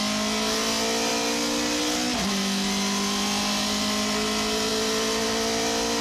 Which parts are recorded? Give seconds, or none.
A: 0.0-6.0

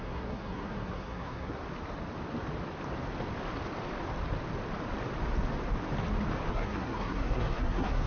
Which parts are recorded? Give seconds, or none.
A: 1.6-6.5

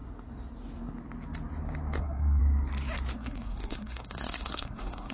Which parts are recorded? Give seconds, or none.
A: 0.0-2.0; 2.4-3.1

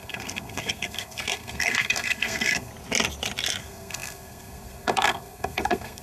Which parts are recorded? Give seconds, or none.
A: 2.7-3.6

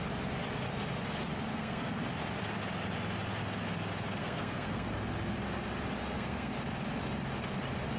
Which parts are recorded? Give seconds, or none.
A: 0.0-1.5; 2.0-4.2; 4.9-6.0; 6.5-8.0